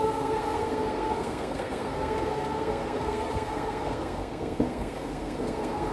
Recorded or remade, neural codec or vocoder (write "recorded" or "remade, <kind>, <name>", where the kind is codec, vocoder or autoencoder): remade, codec, SNAC